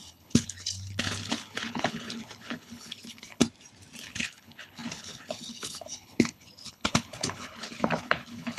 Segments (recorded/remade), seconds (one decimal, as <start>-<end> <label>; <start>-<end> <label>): 0.0-3.4 remade; 3.4-4.0 recorded; 4.0-8.6 remade